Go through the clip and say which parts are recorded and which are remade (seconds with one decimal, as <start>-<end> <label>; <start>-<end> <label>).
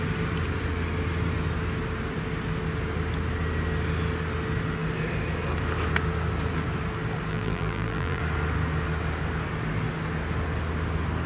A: 0.0-7.3 recorded; 7.3-8.2 remade; 8.2-11.3 recorded